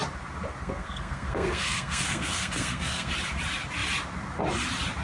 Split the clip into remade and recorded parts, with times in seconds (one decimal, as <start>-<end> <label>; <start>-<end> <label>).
0.0-0.6 recorded; 0.6-3.1 remade; 3.1-5.0 recorded